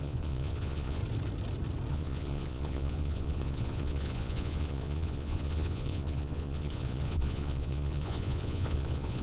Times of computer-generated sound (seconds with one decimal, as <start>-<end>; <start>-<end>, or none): 0.0-1.0; 1.9-9.2